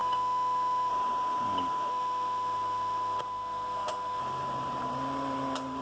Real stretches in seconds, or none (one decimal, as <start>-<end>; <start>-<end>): 0.9-1.9; 4.2-5.8